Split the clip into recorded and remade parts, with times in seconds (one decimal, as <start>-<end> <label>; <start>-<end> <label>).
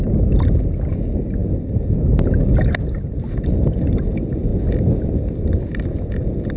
0.0-6.6 recorded